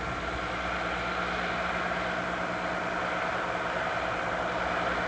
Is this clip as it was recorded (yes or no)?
yes